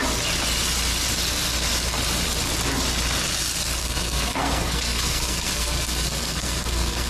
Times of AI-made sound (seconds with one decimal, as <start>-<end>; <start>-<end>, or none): 3.8-7.1